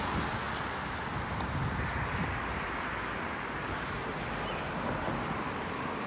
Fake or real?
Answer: real